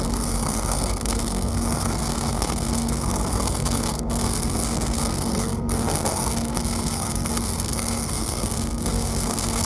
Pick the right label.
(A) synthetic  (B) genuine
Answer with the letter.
A